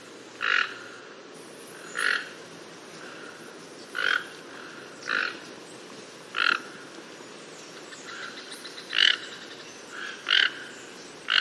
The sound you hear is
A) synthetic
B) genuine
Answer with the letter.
B